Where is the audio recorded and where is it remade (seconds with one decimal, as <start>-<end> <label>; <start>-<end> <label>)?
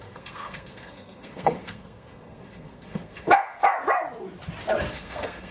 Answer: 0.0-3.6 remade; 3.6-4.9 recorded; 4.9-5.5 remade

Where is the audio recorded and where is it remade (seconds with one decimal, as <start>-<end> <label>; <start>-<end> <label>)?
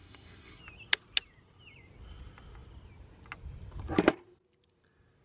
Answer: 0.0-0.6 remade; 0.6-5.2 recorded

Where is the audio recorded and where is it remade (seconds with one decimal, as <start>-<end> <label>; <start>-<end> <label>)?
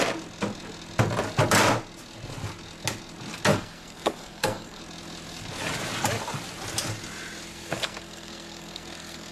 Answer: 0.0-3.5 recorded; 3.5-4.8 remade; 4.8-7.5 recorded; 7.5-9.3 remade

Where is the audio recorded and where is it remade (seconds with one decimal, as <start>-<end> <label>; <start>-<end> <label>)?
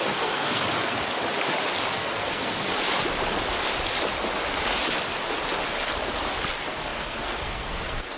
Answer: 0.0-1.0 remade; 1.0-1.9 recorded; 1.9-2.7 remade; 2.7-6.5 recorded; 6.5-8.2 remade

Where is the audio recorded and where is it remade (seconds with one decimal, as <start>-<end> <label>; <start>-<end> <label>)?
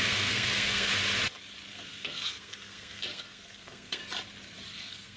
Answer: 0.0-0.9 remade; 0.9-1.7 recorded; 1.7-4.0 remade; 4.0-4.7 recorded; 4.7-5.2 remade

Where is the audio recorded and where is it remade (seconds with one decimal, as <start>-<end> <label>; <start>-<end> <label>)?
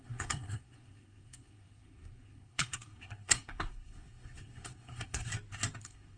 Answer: 0.0-5.3 remade; 5.3-5.8 recorded; 5.8-6.2 remade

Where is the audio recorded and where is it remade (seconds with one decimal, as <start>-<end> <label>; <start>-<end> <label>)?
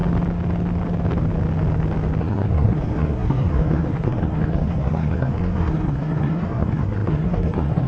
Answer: 0.0-2.2 recorded; 2.2-7.9 remade